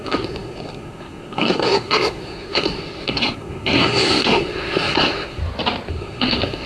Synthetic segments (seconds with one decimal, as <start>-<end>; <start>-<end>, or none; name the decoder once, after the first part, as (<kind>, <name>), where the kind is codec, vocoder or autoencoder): 0.0-5.4 (codec, SNAC); 5.9-6.7